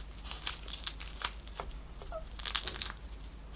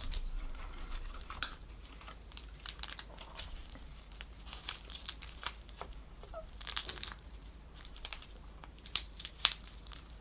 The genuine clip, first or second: first